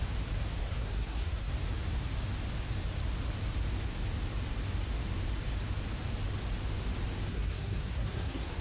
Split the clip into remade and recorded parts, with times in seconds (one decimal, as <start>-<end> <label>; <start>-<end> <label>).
0.0-0.6 recorded; 0.6-1.5 remade; 1.5-7.3 recorded; 7.3-8.6 remade